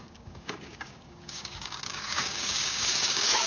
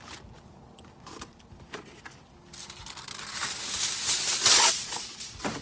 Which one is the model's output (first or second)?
first